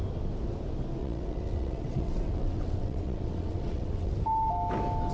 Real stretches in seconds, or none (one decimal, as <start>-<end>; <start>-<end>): 0.0-1.0; 4.1-5.1